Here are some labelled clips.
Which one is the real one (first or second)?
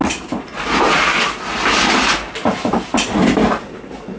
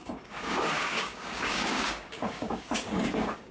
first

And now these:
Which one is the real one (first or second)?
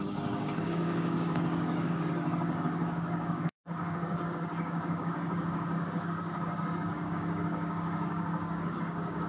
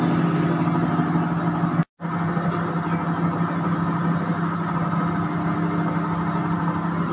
second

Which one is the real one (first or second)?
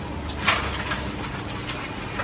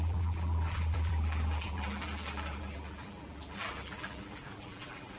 first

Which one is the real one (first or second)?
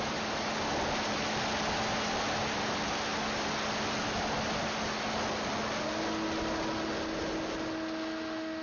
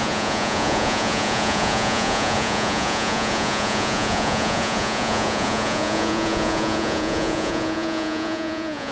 first